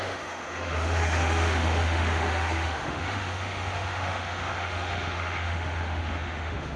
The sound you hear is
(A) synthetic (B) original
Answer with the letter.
A